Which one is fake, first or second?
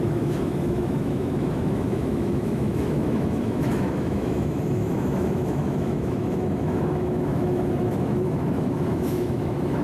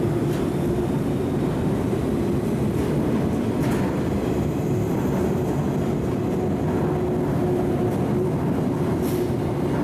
first